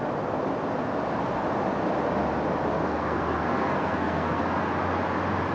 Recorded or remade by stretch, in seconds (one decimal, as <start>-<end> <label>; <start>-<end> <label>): 0.0-2.7 recorded; 2.7-4.4 remade; 4.4-5.5 recorded